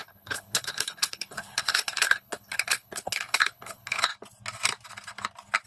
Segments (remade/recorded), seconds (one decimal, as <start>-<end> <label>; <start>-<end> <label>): 0.0-4.1 remade; 4.1-5.7 recorded